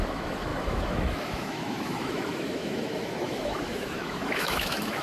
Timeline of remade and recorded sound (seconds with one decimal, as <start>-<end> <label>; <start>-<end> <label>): 0.0-5.0 remade